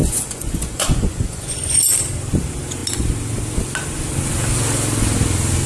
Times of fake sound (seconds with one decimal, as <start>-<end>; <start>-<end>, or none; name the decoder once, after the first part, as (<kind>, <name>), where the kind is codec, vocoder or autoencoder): 0.0-1.8 (vocoder, Vocos)